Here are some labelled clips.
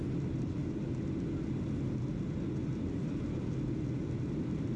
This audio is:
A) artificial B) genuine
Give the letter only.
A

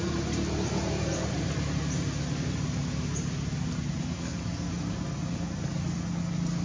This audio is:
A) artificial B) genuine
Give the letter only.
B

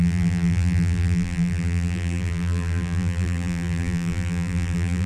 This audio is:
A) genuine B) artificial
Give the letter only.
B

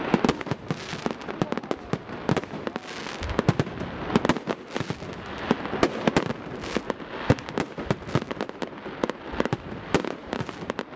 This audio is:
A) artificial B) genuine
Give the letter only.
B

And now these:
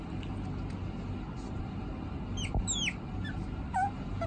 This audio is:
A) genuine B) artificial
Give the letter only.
A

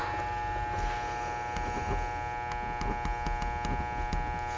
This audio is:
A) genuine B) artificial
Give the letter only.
A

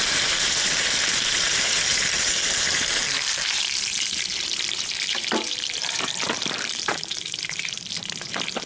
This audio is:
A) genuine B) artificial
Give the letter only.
B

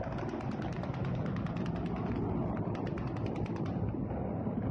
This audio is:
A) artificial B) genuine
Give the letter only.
B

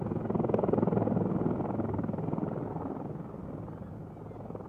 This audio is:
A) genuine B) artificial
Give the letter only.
A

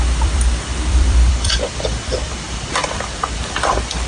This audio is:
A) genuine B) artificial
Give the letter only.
B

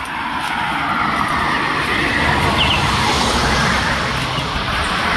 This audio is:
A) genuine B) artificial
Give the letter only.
A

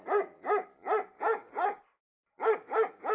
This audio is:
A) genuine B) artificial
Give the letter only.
A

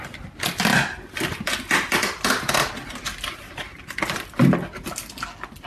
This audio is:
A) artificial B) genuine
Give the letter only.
B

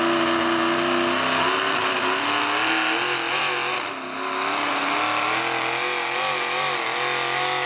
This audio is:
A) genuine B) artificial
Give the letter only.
A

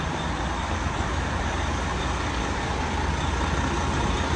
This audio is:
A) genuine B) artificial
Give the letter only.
A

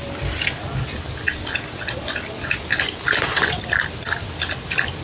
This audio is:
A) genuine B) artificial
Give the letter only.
A